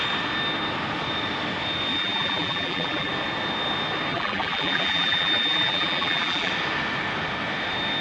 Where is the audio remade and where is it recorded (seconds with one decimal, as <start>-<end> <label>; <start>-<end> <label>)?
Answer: 0.0-1.9 recorded; 1.9-3.1 remade; 3.1-4.1 recorded; 4.1-6.5 remade; 6.5-8.0 recorded